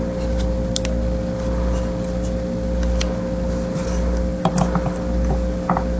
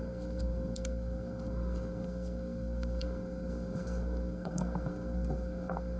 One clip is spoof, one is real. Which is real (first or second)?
first